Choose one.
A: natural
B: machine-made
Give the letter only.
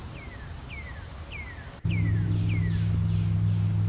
A